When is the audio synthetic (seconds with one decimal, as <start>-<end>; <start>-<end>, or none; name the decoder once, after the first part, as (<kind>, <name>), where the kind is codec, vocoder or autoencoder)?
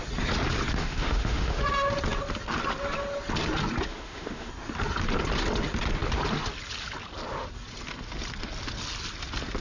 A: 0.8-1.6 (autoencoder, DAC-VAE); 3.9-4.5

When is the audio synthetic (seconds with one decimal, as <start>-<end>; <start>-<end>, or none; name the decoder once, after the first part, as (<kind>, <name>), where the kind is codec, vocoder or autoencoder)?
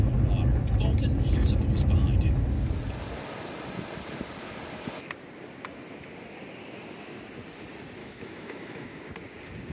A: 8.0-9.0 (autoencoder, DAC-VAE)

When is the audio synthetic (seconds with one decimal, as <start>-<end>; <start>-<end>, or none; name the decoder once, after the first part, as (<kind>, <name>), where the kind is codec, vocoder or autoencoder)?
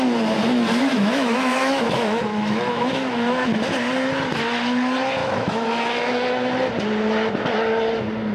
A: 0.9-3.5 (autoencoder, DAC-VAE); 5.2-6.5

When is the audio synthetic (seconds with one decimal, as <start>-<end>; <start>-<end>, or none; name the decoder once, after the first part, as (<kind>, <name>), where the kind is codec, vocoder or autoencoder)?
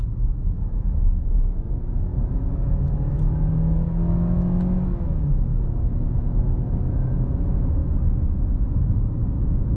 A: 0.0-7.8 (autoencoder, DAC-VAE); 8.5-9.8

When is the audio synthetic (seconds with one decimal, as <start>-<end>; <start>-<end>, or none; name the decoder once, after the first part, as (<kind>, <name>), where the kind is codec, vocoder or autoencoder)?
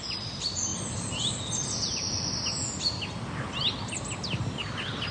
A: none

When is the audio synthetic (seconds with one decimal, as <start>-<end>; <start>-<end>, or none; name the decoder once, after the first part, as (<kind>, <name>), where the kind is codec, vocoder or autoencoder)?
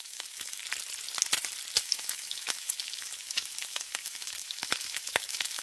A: 0.0-0.6 (autoencoder, DAC-VAE); 1.8-5.6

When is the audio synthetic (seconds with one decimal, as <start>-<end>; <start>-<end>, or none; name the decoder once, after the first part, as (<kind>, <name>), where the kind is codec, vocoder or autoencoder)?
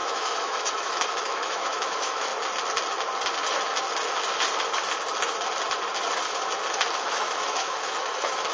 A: 0.0-2.3 (autoencoder, DAC-VAE); 7.0-8.5